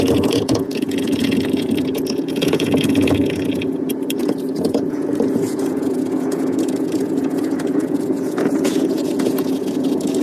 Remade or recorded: remade